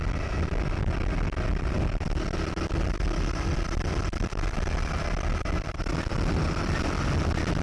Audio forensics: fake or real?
real